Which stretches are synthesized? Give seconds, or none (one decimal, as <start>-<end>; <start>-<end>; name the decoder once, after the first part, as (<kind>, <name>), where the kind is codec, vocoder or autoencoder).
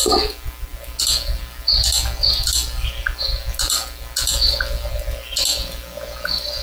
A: none